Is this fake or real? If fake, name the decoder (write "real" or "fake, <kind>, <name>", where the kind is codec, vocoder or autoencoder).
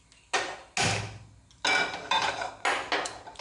real